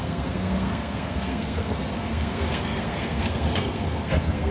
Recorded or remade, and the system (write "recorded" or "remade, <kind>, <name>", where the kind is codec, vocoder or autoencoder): remade, codec, SNAC